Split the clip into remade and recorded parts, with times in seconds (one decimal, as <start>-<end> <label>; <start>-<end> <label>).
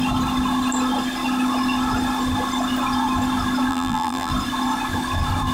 0.0-3.7 recorded; 3.7-4.3 remade; 4.3-5.5 recorded